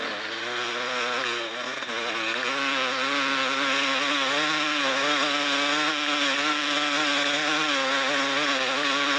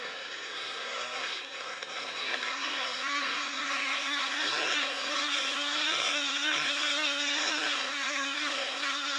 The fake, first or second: second